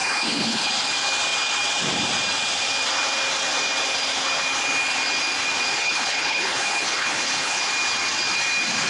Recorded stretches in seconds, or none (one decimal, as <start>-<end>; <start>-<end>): 0.7-5.7; 7.6-8.9

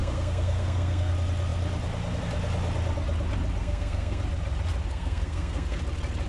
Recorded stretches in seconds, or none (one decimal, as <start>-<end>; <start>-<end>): 1.1-3.6; 4.2-4.9; 5.8-6.3

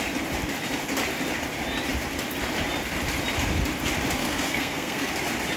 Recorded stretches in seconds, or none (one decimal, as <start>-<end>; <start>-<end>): 0.0-4.2; 5.1-5.6

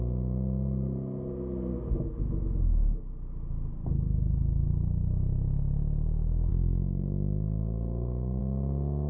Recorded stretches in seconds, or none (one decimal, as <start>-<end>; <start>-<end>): 0.0-1.7; 2.3-3.8; 4.7-6.5; 8.4-9.1

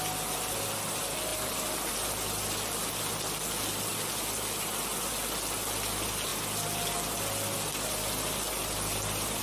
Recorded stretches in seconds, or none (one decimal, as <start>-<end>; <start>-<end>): 0.0-1.3; 3.1-9.4

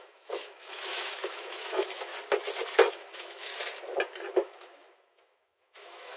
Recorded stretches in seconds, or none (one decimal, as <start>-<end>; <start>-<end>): 2.1-2.9; 3.5-4.3

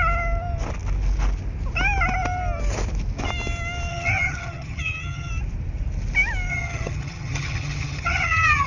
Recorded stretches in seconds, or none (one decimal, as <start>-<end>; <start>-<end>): 0.0-3.9; 5.3-6.5